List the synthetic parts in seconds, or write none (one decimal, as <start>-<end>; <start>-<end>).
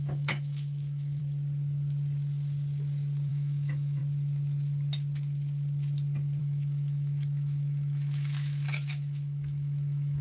0.0-1.2; 3.3-4.0; 6.4-10.2